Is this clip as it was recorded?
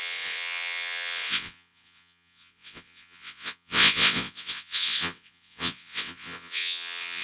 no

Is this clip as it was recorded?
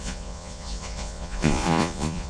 no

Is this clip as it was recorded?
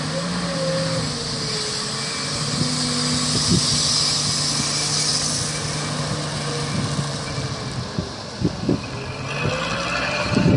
yes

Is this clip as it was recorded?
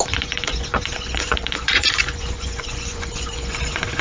no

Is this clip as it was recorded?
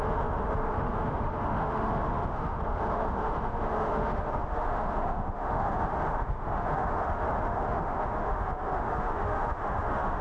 no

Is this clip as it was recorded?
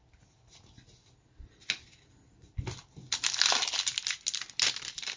yes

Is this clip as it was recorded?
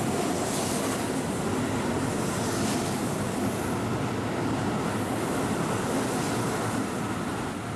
yes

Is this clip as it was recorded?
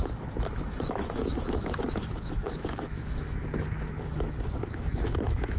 no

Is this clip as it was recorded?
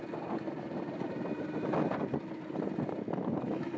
yes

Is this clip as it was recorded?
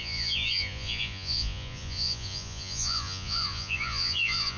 no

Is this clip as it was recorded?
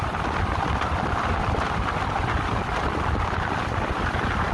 yes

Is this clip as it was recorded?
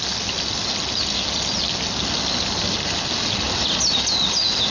yes